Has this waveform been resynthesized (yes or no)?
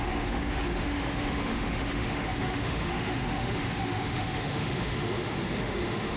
yes